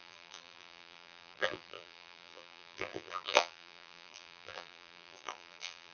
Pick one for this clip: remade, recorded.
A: remade